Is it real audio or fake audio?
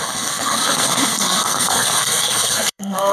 fake